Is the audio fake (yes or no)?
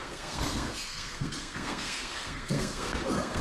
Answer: yes